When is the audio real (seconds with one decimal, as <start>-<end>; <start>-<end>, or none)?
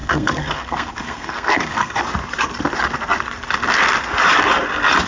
2.0-5.1